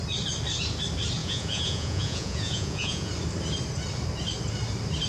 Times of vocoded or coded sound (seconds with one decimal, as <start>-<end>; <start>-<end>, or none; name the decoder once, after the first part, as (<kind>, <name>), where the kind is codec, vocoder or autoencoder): 1.2-3.1 (vocoder, Vocos)